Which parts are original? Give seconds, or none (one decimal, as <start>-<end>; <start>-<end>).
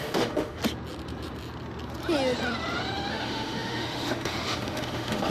0.6-3.1